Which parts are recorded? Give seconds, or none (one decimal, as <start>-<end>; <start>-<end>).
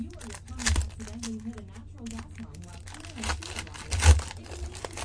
0.0-5.0